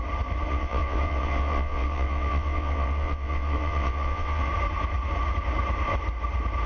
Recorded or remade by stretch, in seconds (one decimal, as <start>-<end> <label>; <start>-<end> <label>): 0.0-0.5 recorded; 0.5-4.5 remade; 4.5-6.7 recorded